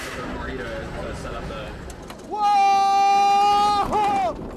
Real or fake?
real